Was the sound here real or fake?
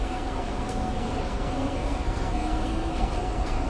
fake